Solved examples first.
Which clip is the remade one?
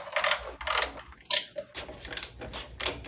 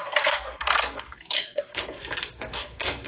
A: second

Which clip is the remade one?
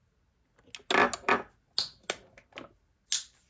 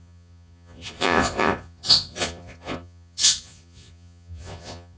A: second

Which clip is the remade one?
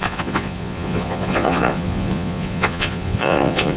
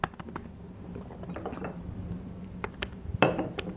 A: first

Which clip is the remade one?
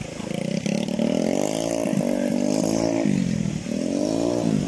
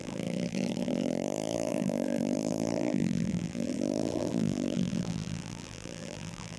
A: second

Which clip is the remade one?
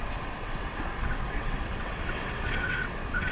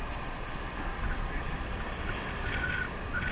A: first